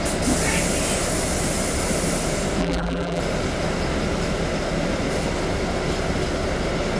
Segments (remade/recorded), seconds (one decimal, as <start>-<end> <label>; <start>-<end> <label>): 0.0-2.6 recorded; 2.6-3.2 remade; 3.2-7.0 recorded

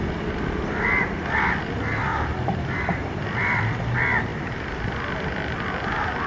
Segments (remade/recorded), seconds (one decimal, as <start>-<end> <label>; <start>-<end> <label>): 0.0-2.1 recorded; 2.1-3.8 remade; 3.8-6.3 recorded

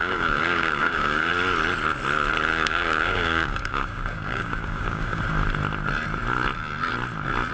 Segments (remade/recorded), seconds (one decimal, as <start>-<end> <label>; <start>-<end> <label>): 0.0-1.3 remade; 1.3-2.5 recorded; 2.5-5.2 remade; 5.2-7.5 recorded

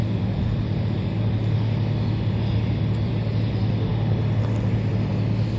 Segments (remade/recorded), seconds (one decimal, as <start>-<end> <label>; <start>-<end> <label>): 0.0-5.6 recorded

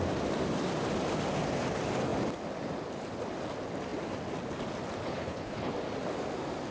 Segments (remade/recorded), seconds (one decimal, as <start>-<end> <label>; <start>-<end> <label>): 0.0-5.0 recorded; 5.0-5.7 remade; 5.7-6.7 recorded

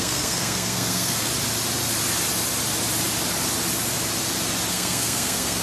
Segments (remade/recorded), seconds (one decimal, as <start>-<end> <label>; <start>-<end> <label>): 0.0-1.3 remade; 1.3-4.7 recorded; 4.7-5.6 remade